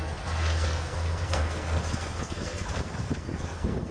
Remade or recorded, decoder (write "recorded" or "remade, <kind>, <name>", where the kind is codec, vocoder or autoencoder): remade, codec, SNAC